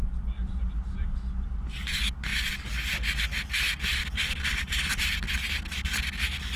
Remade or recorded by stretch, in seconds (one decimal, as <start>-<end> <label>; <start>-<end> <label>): 0.0-0.6 remade; 0.6-6.6 recorded